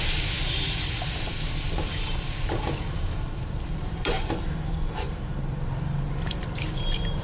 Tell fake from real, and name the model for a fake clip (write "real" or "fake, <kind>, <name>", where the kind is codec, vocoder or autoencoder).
fake, vocoder, BigVGAN v2